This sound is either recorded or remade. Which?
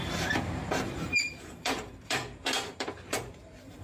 remade